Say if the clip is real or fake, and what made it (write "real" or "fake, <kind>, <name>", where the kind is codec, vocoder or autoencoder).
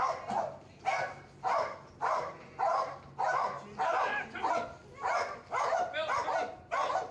real